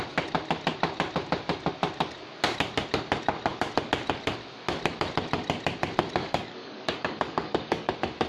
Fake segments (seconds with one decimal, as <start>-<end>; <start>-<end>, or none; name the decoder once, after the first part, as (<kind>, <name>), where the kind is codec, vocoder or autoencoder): 6.2-7.9 (codec, DAC)